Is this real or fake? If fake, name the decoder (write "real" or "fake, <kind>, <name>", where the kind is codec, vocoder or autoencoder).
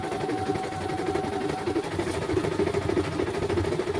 real